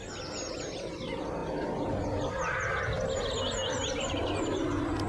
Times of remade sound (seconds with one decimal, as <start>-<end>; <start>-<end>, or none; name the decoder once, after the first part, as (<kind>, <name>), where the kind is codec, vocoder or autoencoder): none